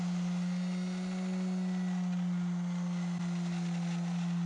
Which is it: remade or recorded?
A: recorded